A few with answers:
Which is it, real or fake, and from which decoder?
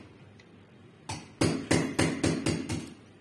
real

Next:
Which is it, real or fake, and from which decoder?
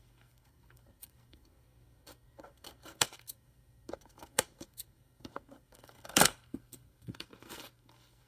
fake, codec, SNAC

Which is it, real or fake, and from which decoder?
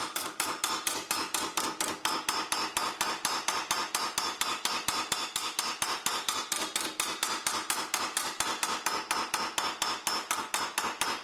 real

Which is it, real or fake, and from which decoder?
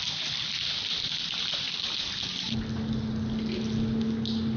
real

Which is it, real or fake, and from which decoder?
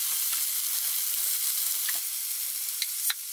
real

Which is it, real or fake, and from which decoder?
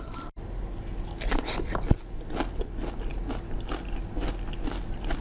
real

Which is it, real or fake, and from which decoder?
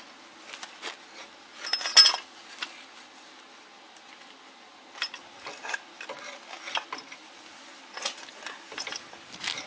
real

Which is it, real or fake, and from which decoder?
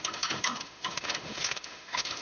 fake, autoencoder, DAC-VAE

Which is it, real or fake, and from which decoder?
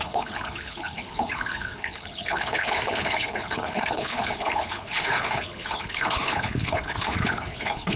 fake, codec, HILCodec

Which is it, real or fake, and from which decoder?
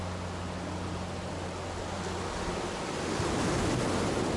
real